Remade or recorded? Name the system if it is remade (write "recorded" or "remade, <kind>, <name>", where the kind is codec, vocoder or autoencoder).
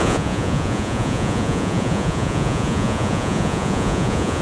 remade, vocoder, Vocos